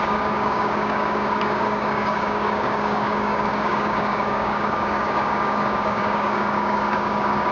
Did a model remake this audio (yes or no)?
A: yes